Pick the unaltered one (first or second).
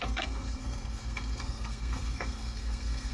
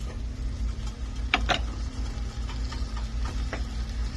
second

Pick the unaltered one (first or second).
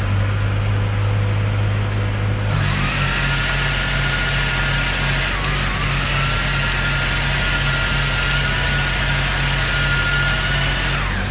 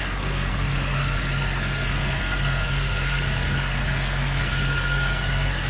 first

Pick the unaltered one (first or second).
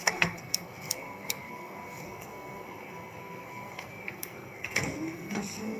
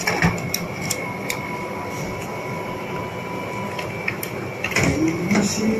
second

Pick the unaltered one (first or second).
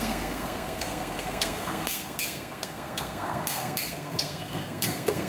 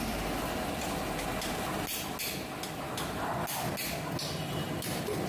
second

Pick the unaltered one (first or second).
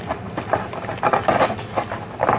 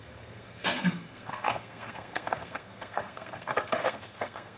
first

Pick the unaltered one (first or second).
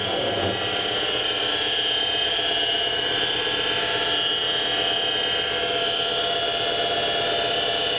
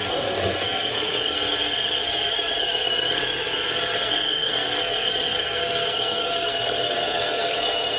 first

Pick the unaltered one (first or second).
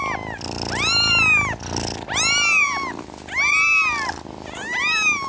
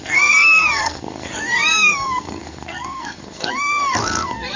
first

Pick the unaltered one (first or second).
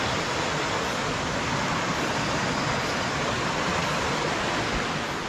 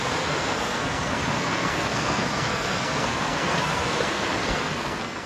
first